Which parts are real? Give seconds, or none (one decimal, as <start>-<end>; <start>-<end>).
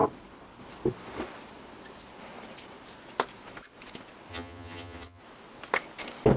0.0-4.3; 5.2-6.4